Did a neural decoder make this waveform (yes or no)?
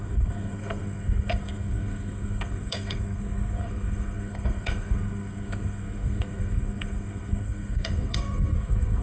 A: yes